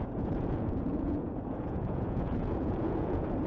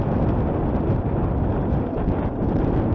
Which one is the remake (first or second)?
first